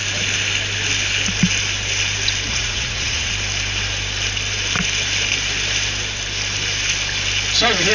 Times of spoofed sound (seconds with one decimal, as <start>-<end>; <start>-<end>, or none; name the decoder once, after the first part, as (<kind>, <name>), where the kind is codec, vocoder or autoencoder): 2.5-3.3 (vocoder, Vocos)